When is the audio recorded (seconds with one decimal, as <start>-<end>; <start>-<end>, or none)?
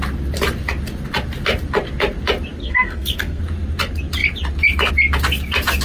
0.0-2.6; 3.4-5.8